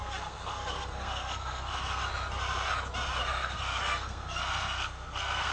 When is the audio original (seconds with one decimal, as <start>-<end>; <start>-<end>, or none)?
2.0-3.2